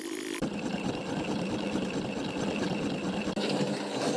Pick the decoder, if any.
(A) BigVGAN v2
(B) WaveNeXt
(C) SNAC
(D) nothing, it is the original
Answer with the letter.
D